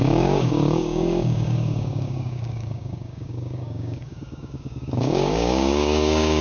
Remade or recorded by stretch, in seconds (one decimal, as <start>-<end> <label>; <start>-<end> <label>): 0.0-6.4 remade